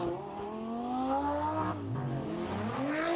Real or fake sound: real